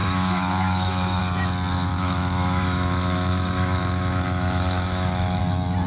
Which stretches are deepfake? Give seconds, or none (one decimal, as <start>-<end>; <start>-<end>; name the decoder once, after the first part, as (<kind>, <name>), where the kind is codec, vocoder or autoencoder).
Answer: 0.0-1.2 (autoencoder, DAC-VAE); 1.9-5.4